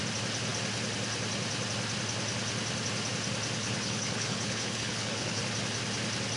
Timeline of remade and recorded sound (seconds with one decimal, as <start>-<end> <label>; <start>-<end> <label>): 0.0-3.6 recorded; 3.6-5.4 remade; 5.4-6.4 recorded